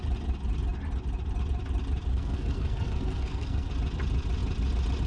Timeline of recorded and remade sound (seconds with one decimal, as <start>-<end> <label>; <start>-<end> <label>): 0.0-2.1 recorded; 2.1-3.7 remade; 3.7-5.1 recorded